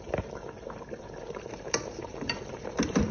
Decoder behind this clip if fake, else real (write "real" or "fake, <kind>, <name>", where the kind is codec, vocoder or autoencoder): fake, vocoder, BigVGAN v2